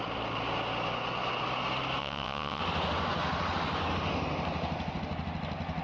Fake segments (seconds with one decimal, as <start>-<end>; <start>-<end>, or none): 2.0-2.6